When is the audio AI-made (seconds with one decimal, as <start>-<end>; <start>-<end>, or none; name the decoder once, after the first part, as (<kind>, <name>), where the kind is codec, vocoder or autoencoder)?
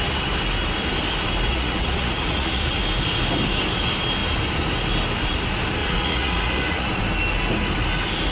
1.5-2.8 (vocoder, Vocos); 5.8-7.0